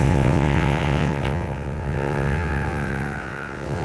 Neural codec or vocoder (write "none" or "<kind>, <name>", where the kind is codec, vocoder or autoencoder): vocoder, WaveNeXt